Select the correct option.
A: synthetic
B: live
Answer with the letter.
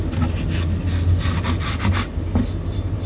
B